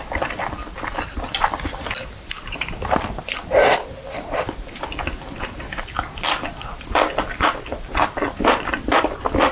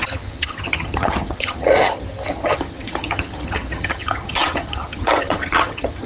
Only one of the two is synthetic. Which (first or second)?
second